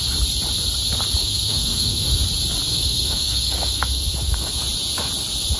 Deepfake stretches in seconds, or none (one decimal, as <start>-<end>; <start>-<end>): 1.2-2.2; 2.7-4.6